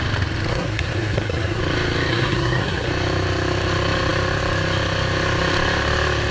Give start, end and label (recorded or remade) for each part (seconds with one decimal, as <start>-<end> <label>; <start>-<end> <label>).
0.0-0.5 recorded; 0.5-1.6 remade; 1.6-2.1 recorded; 2.1-2.9 remade; 2.9-6.3 recorded